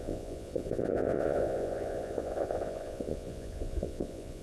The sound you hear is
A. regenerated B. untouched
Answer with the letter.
A